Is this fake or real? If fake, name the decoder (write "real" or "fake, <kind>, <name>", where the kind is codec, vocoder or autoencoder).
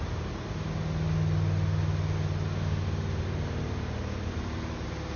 real